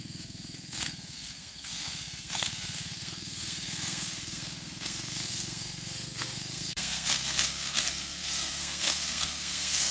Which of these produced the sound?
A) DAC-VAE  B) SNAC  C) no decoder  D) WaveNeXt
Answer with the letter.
B